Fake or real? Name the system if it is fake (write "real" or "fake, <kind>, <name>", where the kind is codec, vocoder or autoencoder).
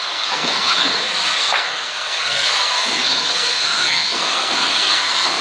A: fake, codec, SNAC